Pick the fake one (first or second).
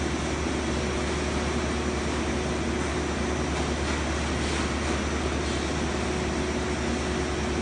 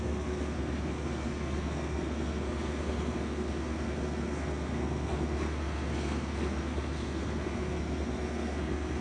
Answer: second